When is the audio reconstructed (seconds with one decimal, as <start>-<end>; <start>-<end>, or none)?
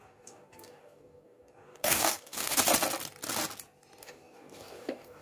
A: 0.0-2.6; 4.0-5.2